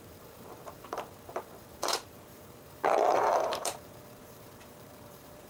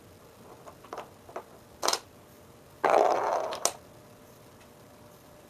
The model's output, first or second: first